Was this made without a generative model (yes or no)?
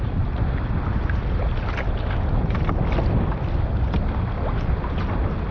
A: yes